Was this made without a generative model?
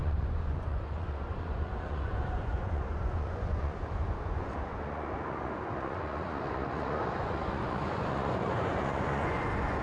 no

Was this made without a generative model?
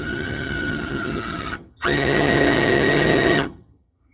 no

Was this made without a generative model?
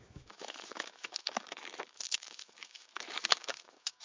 no